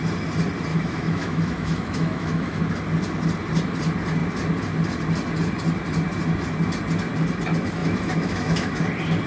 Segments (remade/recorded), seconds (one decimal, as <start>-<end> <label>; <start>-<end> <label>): 0.0-0.7 recorded; 0.7-2.6 remade; 2.6-7.8 recorded; 7.8-8.8 remade; 8.8-9.3 recorded